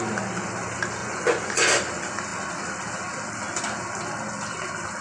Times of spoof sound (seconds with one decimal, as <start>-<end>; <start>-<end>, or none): 1.0-1.8